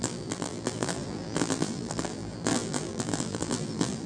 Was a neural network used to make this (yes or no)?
yes